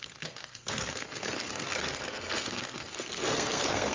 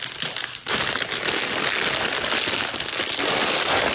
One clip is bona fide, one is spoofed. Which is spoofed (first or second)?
first